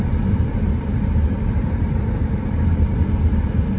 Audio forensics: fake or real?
fake